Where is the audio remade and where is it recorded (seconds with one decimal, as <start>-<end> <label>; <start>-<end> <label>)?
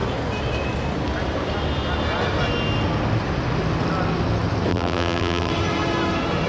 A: 0.0-4.7 recorded; 4.7-5.5 remade; 5.5-6.5 recorded